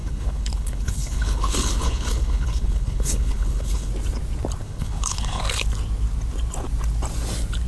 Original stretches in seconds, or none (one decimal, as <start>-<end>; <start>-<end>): 3.9-4.6; 5.4-7.7